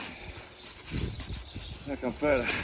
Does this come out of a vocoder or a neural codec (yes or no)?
no